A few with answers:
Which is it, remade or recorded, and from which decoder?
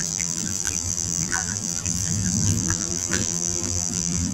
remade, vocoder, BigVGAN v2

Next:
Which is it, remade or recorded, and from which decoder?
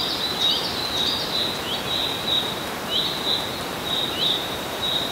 remade, vocoder, BigVGAN v2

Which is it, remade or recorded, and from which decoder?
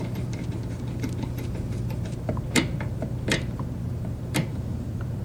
remade, vocoder, BigVGAN v2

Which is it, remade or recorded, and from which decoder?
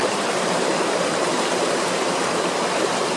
remade, vocoder, BigVGAN v2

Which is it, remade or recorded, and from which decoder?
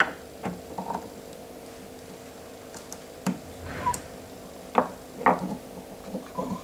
recorded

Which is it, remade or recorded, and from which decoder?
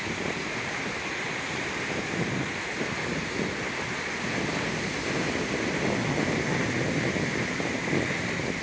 recorded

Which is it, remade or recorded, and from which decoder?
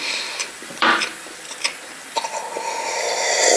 remade, vocoder, BigVGAN v2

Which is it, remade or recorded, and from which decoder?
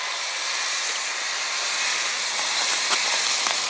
remade, vocoder, BigVGAN v2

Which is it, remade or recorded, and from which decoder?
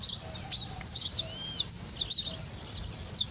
recorded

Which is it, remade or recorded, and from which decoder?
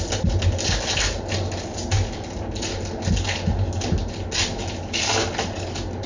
recorded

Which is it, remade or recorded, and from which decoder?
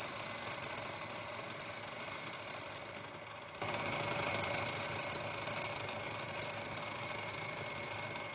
remade, vocoder, BigVGAN v2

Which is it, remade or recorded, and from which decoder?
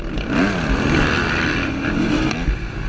recorded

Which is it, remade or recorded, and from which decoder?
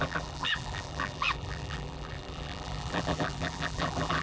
remade, vocoder, BigVGAN v2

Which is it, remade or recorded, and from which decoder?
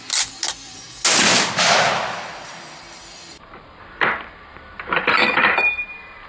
recorded